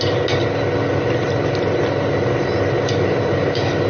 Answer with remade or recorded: recorded